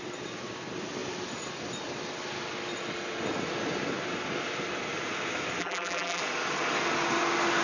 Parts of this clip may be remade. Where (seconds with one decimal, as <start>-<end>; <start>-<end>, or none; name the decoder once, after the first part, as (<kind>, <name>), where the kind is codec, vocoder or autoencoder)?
5.6-6.2 (vocoder, BigVGAN v2)